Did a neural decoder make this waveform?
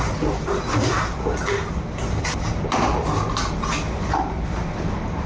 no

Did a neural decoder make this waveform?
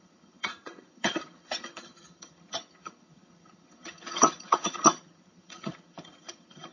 yes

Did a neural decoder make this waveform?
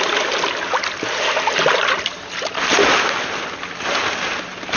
no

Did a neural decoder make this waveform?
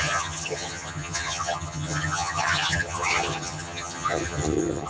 yes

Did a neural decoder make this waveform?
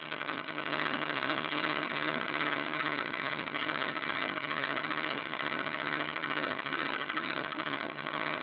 yes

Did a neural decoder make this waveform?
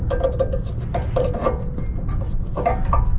no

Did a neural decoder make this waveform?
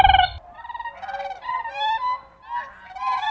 no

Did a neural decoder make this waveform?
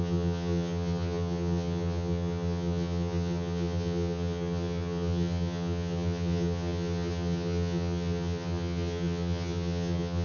yes